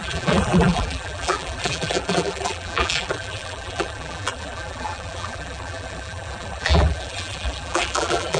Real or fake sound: fake